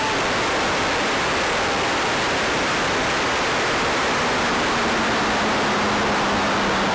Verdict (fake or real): real